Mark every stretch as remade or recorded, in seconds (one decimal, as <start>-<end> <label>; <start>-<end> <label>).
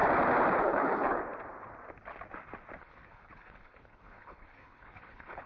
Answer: 0.0-0.6 recorded; 0.6-1.2 remade; 1.2-2.8 recorded; 2.8-5.5 remade